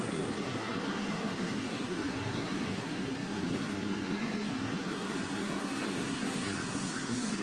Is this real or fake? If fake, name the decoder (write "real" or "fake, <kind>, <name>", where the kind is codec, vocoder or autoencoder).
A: fake, codec, SNAC